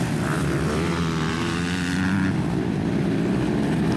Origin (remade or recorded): recorded